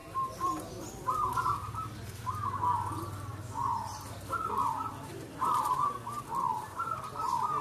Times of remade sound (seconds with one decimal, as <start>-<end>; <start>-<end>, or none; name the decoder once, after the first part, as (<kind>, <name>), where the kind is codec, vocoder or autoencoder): 5.1-5.9 (vocoder, BigVGAN v2); 6.5-7.0